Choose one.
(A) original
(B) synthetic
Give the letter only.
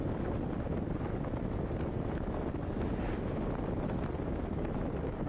A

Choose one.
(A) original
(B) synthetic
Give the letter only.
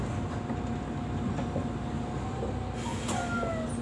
A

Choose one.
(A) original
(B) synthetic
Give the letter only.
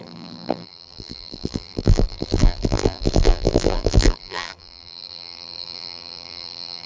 B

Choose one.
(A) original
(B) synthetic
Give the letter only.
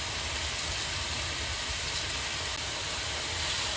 A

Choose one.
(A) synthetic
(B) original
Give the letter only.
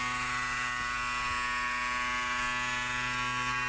B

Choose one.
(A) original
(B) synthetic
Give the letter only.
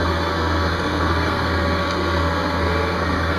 B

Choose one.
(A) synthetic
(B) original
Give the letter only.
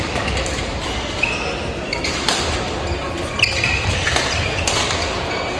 B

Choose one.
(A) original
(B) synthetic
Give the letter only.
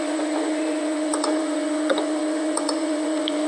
B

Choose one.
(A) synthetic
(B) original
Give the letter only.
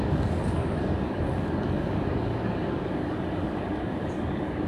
A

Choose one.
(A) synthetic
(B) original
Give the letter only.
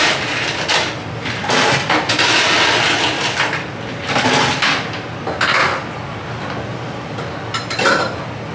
B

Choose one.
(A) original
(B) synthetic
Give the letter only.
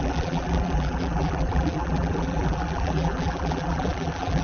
B